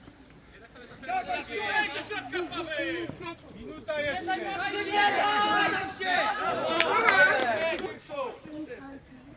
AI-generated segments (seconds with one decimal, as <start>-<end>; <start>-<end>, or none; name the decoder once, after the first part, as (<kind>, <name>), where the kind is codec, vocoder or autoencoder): 0.0-7.4 (vocoder, BigVGAN v2); 8.1-9.4